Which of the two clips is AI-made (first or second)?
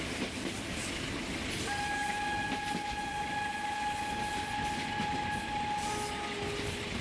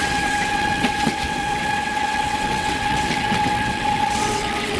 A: second